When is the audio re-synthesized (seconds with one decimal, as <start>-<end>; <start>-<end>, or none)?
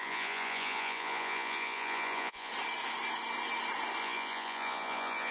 0.0-2.5; 4.0-5.3